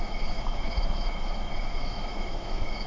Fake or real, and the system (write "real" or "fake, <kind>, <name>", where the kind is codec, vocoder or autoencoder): fake, autoencoder, DAC-VAE